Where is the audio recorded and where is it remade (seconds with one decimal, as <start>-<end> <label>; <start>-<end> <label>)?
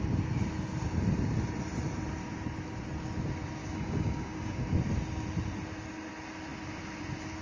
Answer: 0.0-3.6 recorded; 3.6-4.7 remade; 4.7-7.4 recorded